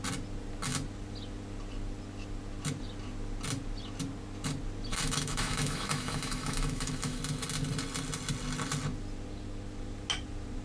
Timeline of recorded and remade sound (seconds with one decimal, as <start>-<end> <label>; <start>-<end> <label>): 0.0-4.9 recorded; 4.9-7.2 remade; 7.2-10.6 recorded